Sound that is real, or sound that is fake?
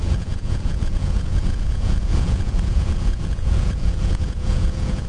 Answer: fake